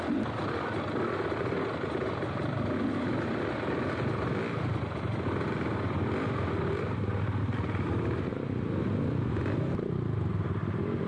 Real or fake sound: real